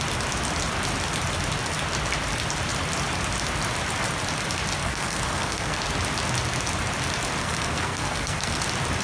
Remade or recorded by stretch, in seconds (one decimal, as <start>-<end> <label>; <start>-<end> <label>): 0.0-4.8 recorded; 4.8-5.8 remade; 5.8-7.4 recorded; 7.4-8.6 remade; 8.6-9.0 recorded